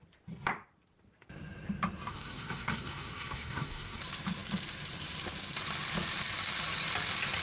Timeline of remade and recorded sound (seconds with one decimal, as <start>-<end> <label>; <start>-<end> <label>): 0.0-2.1 recorded; 2.1-4.0 remade; 4.0-7.4 recorded